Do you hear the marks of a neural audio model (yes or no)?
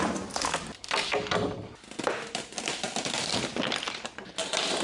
no